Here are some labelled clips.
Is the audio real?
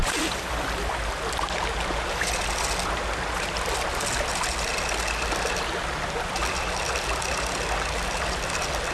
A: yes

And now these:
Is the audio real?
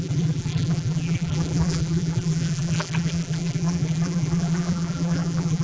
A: no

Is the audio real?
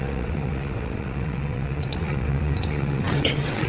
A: no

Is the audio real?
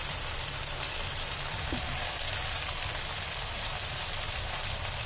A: no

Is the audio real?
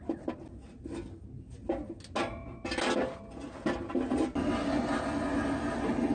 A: yes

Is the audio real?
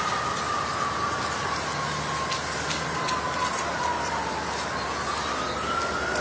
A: yes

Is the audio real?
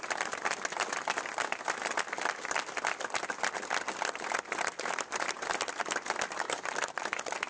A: yes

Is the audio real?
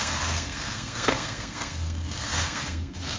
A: no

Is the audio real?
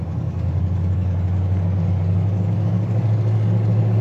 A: no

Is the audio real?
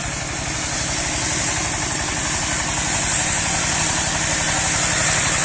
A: yes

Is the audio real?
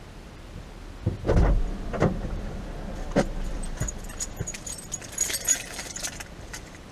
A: no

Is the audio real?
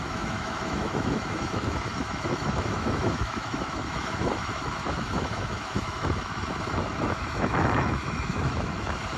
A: no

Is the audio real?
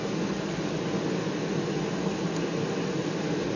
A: yes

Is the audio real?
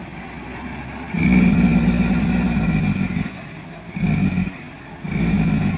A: yes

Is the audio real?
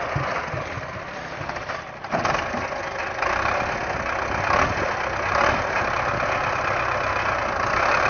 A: yes